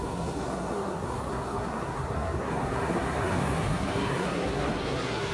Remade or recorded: remade